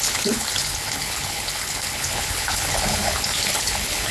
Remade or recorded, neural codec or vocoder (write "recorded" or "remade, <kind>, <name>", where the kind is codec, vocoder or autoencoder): remade, codec, HILCodec